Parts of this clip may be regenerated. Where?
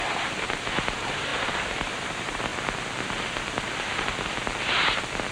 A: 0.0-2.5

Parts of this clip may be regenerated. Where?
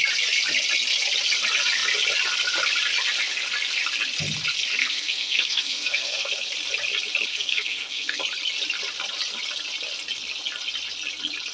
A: 4.8-6.3; 7.3-8.2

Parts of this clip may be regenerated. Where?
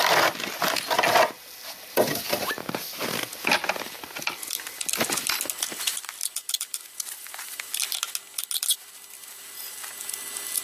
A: 2.6-5.3; 5.9-7.8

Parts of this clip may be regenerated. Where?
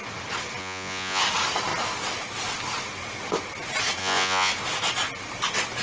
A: 0.6-1.2; 4.0-4.5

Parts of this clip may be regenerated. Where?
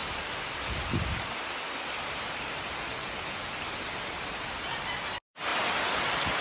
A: none